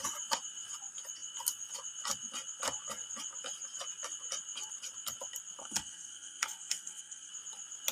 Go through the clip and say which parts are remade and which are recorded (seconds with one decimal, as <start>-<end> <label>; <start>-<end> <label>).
0.0-5.6 recorded; 5.6-7.3 remade; 7.3-7.9 recorded